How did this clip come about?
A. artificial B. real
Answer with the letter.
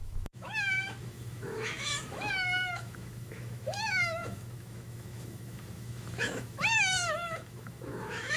A